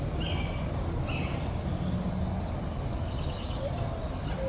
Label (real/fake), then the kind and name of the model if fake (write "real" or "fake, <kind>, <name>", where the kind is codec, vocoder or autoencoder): real